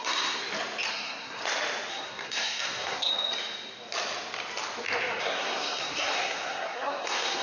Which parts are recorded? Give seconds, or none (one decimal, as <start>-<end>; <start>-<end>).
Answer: 0.4-0.9; 1.4-1.9; 3.1-5.2